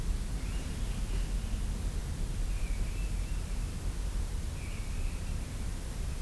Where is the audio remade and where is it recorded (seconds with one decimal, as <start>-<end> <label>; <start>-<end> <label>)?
0.0-6.2 recorded